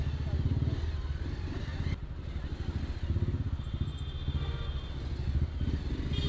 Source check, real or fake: real